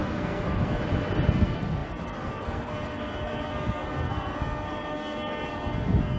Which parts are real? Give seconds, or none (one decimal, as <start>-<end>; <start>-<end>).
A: 0.8-1.3